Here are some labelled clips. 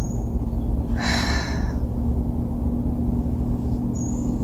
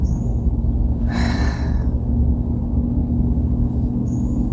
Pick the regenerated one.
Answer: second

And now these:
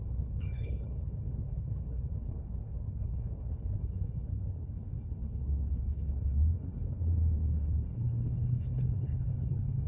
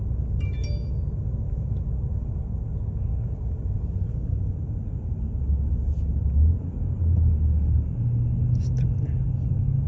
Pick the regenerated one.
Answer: first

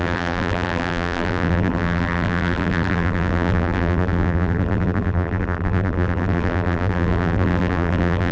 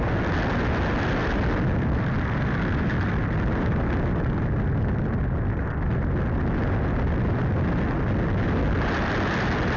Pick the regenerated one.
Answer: first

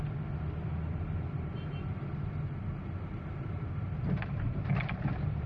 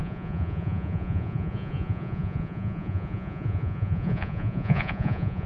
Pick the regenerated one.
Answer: second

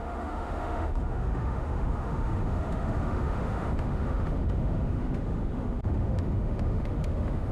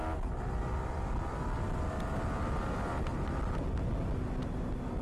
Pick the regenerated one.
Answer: first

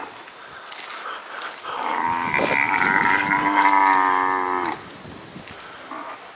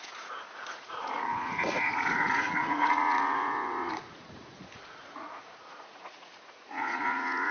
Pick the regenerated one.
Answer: second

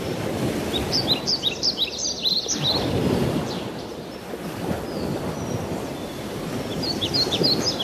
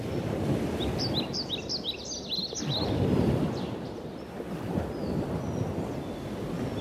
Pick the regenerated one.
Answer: first